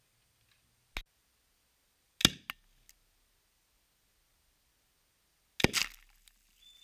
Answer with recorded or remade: recorded